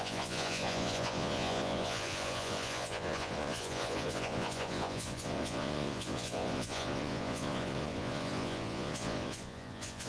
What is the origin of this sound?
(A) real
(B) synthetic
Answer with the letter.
B